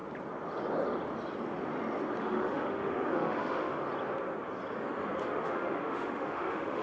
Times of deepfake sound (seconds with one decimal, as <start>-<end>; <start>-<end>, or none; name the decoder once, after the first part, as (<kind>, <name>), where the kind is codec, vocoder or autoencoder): 2.2-3.8 (autoencoder, DAC-VAE); 5.2-6.8